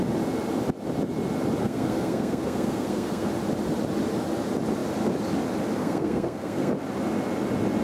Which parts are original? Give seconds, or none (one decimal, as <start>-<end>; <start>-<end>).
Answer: 0.0-1.6; 3.3-5.8; 6.7-7.8